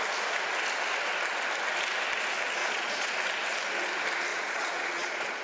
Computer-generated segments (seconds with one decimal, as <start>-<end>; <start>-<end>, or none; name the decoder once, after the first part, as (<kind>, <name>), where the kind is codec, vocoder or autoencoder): 2.6-3.1 (vocoder, Vocos); 4.3-5.4